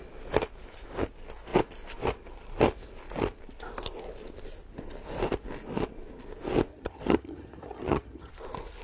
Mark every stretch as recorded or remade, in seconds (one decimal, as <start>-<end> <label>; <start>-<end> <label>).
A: 0.0-6.7 recorded; 6.7-8.3 remade; 8.3-8.8 recorded